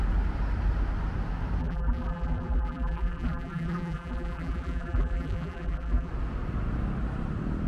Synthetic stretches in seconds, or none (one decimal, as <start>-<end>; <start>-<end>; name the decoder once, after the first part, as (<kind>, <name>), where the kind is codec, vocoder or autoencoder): 1.6-6.1 (vocoder, BigVGAN v2)